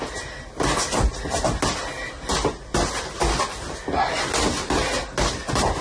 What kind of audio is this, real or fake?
real